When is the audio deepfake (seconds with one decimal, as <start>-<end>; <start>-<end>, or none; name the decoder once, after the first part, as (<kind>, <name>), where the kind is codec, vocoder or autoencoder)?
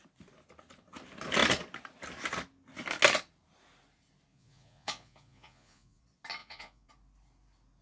4.3-6.0 (vocoder, Vocos); 6.4-6.9